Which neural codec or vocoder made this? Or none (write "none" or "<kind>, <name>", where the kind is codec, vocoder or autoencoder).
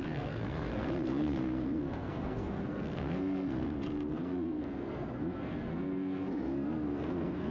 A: codec, SNAC